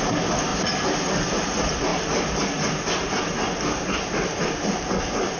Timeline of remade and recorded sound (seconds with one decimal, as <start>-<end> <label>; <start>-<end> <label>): 0.0-5.4 recorded